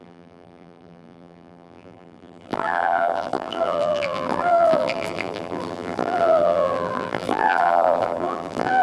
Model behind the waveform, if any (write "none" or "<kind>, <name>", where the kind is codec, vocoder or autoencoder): vocoder, BigVGAN v2